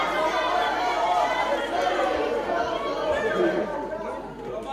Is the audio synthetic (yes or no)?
no